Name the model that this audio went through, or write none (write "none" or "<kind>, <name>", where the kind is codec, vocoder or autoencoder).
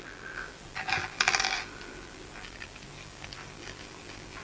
vocoder, BigVGAN v2